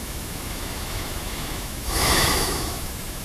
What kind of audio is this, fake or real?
fake